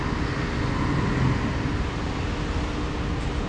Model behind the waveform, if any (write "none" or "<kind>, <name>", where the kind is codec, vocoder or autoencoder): none